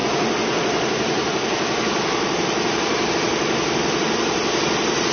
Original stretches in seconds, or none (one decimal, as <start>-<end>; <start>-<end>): 0.0-5.1